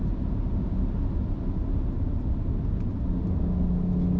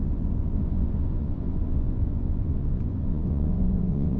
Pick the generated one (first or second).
second